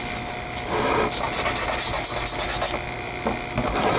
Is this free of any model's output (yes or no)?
yes